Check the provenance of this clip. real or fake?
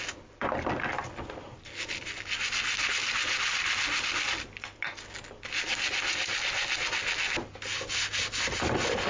real